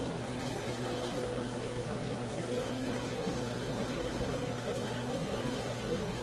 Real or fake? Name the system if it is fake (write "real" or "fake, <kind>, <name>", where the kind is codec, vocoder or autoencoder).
fake, codec, SNAC